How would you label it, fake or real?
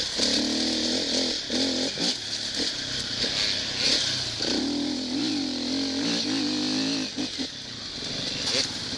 real